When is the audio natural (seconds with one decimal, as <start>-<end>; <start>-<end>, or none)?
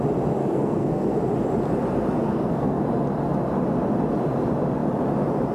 0.0-0.4; 1.2-2.2; 2.8-5.5